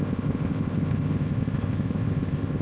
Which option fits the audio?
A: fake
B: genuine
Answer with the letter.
A